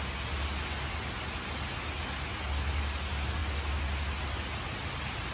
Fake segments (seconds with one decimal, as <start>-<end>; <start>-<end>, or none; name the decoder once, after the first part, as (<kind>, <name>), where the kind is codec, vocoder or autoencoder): none